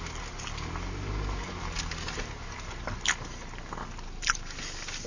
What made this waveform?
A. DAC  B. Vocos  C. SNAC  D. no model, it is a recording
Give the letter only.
D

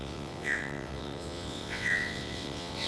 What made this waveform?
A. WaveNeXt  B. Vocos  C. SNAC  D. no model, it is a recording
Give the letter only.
A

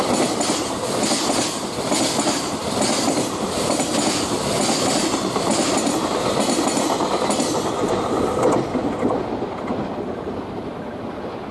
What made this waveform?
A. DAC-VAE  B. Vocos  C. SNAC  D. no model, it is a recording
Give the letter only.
D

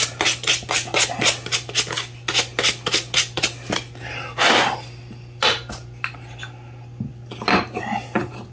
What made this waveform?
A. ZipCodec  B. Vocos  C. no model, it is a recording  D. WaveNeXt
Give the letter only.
C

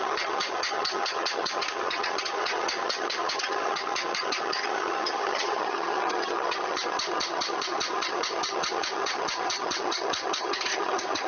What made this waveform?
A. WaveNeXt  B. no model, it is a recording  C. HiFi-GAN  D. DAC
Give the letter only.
C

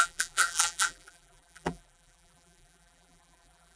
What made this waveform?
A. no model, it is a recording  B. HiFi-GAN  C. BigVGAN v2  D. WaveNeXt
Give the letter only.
C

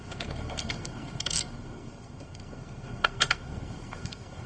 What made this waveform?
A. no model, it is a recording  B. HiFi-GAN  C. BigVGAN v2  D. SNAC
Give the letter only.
D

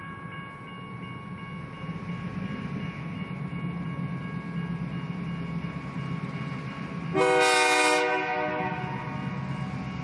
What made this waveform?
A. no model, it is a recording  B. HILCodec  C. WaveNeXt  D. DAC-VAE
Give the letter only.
A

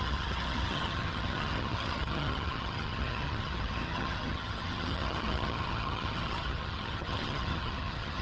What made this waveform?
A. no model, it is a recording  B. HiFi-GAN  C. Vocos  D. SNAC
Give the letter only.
B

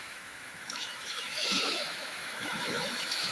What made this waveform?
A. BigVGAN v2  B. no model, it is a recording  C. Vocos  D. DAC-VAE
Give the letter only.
D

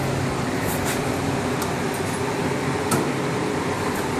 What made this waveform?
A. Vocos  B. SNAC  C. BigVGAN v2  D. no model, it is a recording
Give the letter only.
D